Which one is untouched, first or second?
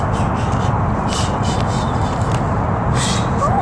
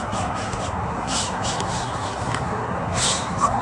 first